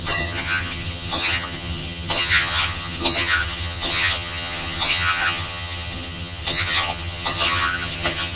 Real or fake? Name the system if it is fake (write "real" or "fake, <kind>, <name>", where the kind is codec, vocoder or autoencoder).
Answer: fake, vocoder, HiFi-GAN